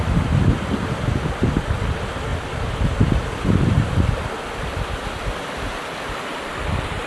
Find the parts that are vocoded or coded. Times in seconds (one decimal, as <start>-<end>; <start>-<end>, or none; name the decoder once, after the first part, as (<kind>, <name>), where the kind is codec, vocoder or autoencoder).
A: none